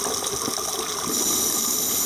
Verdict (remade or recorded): recorded